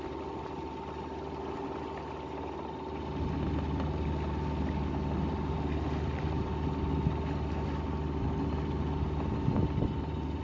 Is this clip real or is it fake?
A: real